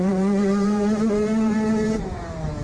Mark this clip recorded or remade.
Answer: remade